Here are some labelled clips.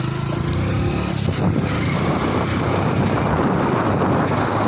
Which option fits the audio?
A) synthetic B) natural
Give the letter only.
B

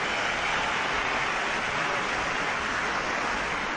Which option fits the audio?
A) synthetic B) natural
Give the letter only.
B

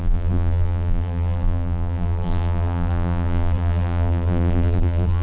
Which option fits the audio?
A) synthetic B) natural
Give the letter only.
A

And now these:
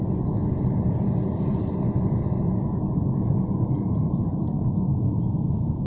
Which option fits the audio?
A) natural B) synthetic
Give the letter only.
B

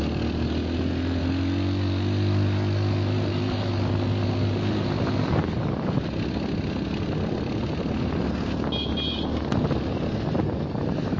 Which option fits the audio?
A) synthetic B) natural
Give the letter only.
B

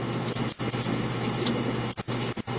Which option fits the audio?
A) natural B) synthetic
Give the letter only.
A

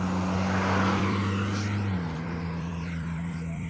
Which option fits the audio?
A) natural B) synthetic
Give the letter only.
B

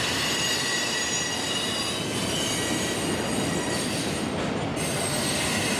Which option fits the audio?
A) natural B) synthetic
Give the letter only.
A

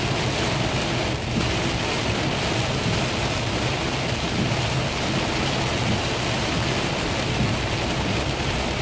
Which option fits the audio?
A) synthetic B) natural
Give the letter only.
B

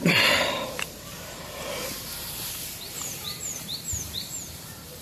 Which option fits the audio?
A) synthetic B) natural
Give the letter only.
A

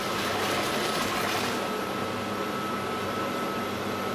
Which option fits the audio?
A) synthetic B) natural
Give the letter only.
A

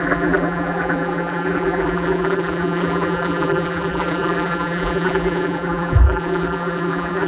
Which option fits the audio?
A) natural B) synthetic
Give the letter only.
B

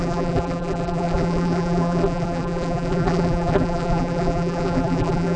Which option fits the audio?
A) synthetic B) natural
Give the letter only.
A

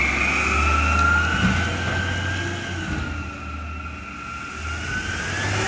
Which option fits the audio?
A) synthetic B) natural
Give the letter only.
B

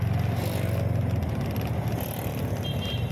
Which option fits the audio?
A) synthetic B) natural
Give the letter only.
B